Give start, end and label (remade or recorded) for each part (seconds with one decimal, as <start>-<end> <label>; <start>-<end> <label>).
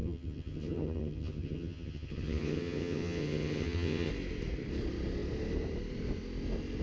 0.0-4.1 remade; 4.1-6.8 recorded